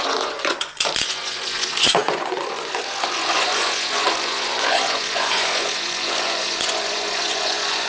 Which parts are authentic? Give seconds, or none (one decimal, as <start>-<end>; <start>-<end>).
none